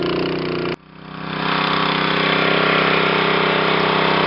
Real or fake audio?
real